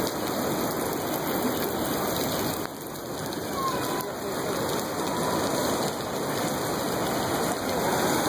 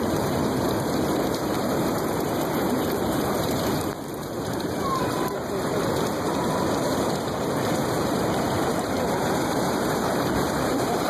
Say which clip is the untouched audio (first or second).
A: first